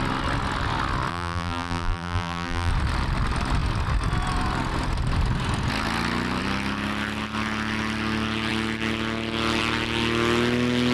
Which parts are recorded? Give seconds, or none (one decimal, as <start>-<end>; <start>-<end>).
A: 0.0-1.1; 2.7-10.9